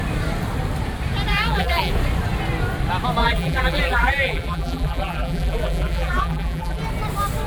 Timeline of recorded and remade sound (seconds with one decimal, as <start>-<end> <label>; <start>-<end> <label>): 0.0-1.3 recorded; 1.3-1.9 remade; 1.9-3.2 recorded; 3.2-6.8 remade; 6.8-7.5 recorded

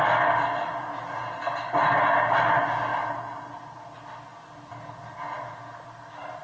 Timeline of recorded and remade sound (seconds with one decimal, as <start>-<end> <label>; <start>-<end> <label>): 0.0-2.9 recorded; 2.9-3.5 remade; 3.5-6.4 recorded

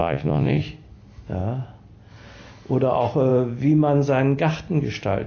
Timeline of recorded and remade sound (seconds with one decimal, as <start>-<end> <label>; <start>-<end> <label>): 0.0-0.6 remade; 0.6-5.3 recorded

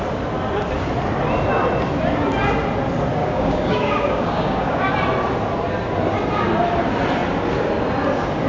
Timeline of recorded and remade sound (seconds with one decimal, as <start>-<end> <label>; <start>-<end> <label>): 0.0-3.2 recorded; 3.2-4.9 remade; 4.9-8.5 recorded

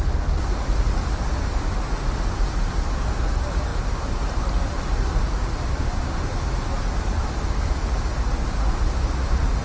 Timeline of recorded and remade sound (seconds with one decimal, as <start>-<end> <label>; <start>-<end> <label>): 0.0-9.6 recorded